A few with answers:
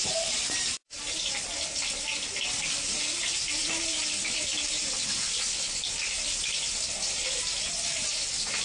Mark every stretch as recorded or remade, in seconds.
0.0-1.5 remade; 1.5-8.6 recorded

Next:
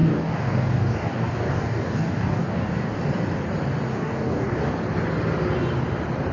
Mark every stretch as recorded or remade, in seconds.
0.0-3.0 remade; 3.0-3.9 recorded; 3.9-4.7 remade; 4.7-6.3 recorded